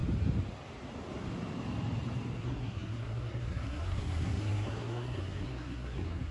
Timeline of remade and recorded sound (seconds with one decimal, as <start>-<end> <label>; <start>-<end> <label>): 0.0-2.4 recorded; 2.4-6.3 remade